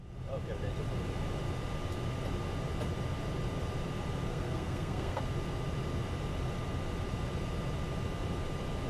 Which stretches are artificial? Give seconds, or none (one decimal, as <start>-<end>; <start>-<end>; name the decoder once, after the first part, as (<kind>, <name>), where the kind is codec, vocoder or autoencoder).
4.3-5.2 (codec, SNAC)